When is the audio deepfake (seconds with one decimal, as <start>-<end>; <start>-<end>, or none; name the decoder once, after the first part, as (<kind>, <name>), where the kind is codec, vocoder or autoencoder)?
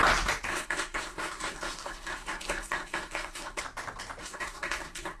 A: 0.5-3.6 (codec, SNAC); 4.2-5.2